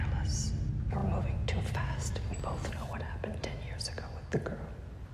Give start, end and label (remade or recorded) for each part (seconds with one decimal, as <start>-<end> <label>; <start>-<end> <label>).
0.0-5.1 recorded